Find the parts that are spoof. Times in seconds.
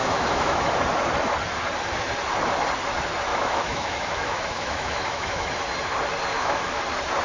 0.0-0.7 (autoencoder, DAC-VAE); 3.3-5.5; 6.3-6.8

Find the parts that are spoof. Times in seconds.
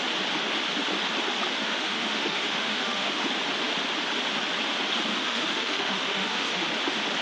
1.6-3.2 (autoencoder, DAC-VAE); 5.1-6.7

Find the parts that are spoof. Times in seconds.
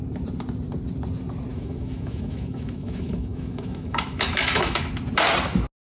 1.5-4.9 (autoencoder, DAC-VAE)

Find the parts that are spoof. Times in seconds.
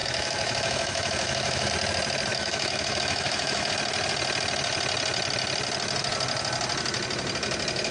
0.0-1.7 (autoencoder, DAC-VAE); 2.3-3.7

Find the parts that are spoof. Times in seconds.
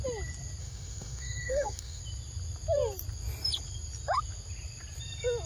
0.6-2.0 (autoencoder, DAC-VAE)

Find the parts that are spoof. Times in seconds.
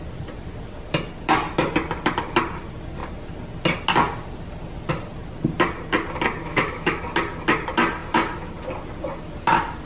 6.4-7.0 (autoencoder, DAC-VAE)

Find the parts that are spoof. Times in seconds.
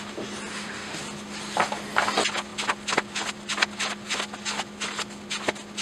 0.5-1.0 (autoencoder, DAC-VAE)